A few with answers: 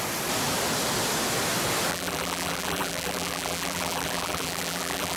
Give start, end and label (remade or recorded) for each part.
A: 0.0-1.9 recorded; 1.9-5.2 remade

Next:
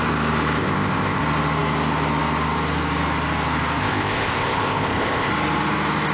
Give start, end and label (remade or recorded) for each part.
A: 0.0-0.6 recorded; 0.6-1.2 remade; 1.2-3.8 recorded; 3.8-5.3 remade; 5.3-6.1 recorded

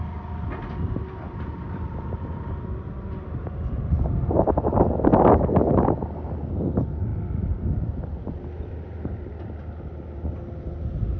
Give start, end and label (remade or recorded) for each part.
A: 0.0-11.2 recorded

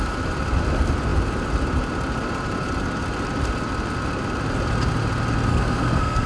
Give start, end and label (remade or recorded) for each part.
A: 0.0-5.5 recorded; 5.5-6.3 remade

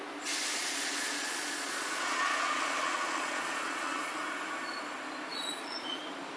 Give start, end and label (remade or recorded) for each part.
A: 0.0-0.6 recorded; 0.6-4.2 remade; 4.2-5.3 recorded; 5.3-6.0 remade; 6.0-6.4 recorded